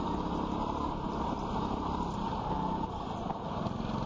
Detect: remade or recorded recorded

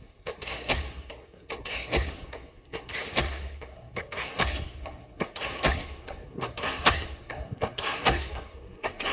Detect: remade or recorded remade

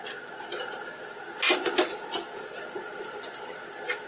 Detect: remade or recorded recorded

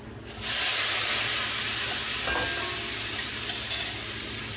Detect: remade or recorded recorded